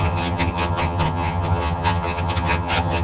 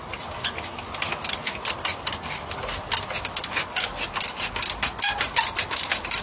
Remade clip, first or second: first